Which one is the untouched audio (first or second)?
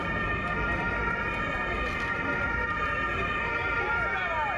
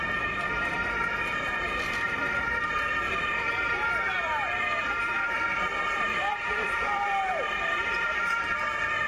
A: first